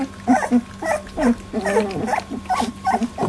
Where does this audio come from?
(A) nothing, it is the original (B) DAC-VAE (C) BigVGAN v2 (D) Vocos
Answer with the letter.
A